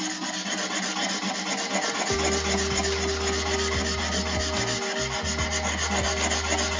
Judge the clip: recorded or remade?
recorded